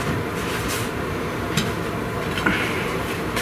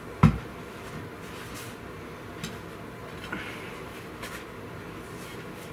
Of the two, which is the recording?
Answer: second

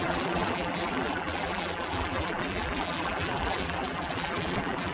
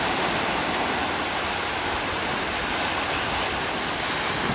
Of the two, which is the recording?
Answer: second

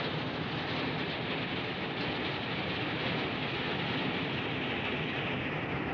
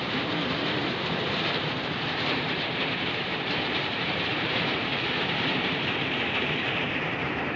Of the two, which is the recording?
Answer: first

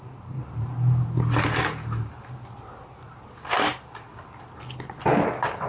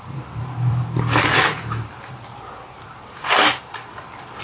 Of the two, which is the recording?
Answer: first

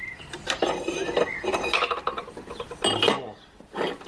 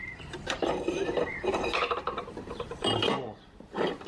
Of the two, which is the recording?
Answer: first